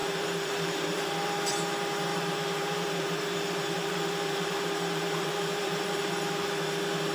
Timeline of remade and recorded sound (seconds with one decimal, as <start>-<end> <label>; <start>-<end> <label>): 0.0-1.5 remade; 1.5-2.1 recorded; 2.1-6.0 remade; 6.0-7.1 recorded